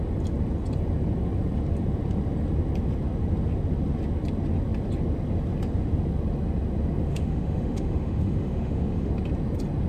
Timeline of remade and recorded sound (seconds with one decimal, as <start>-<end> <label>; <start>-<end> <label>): 0.0-7.1 recorded; 7.1-9.1 remade; 9.1-9.9 recorded